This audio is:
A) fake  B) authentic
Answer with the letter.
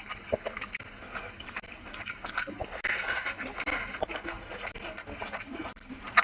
B